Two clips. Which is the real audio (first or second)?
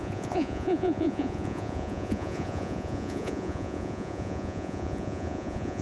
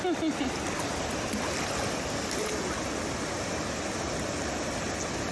second